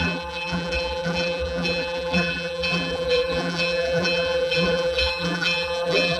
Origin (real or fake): fake